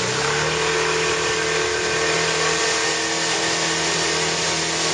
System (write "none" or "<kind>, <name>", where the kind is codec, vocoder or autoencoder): none